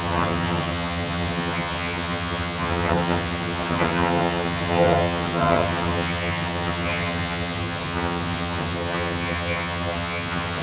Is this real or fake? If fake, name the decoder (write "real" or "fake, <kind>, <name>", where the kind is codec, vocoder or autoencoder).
fake, vocoder, HiFi-GAN